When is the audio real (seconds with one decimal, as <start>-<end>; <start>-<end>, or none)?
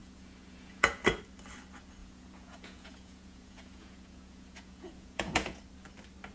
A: 1.2-2.0; 5.6-6.3